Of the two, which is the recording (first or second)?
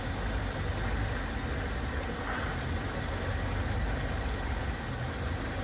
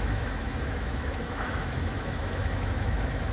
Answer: first